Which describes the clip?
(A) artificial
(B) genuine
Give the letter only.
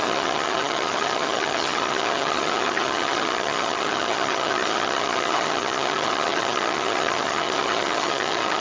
A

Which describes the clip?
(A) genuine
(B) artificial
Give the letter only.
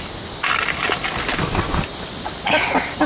A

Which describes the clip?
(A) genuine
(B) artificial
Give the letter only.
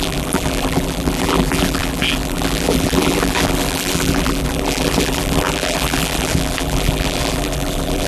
B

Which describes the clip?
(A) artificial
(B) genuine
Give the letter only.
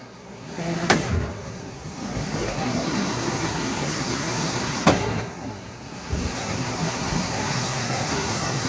A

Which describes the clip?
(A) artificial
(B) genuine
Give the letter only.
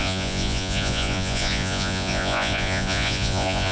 A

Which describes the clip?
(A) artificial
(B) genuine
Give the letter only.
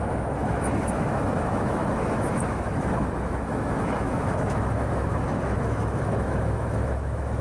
A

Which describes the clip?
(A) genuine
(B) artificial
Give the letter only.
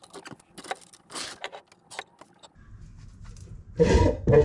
A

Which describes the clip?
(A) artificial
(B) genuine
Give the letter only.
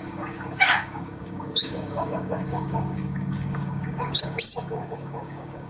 A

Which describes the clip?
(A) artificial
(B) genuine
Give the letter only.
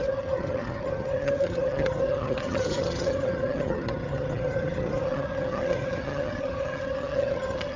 A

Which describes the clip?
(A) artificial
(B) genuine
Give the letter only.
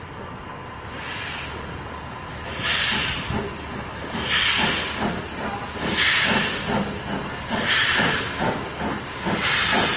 B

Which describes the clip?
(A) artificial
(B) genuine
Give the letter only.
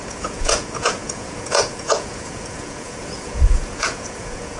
A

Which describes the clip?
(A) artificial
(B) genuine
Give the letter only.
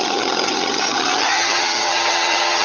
A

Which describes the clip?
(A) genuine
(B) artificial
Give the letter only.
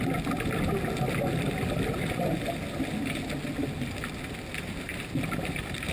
A